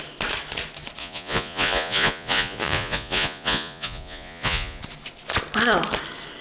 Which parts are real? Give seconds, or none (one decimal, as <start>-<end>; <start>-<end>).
0.0-1.0; 4.8-6.4

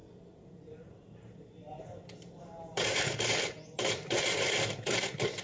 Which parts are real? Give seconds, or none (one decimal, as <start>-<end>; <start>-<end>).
0.0-0.6

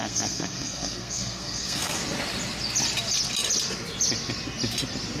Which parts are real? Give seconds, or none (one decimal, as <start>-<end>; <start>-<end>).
2.0-5.2

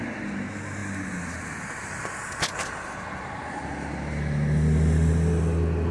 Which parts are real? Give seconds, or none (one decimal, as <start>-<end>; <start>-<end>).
0.0-5.9